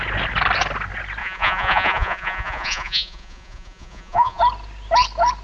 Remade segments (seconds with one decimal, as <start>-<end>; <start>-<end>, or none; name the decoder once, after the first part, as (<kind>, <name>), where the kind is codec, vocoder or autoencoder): 1.2-4.4 (vocoder, Vocos)